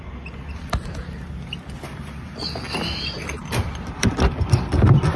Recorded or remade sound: recorded